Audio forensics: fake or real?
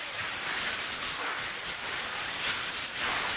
fake